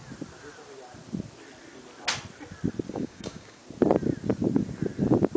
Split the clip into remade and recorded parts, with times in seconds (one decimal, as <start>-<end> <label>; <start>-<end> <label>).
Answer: 0.0-2.9 recorded; 2.9-3.6 remade; 3.6-5.4 recorded